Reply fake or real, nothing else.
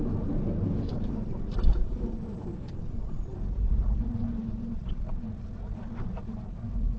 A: fake